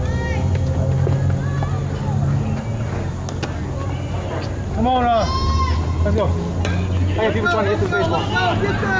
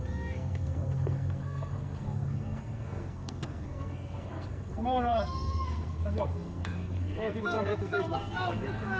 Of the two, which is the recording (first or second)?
first